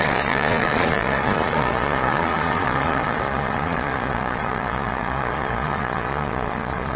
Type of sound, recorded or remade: remade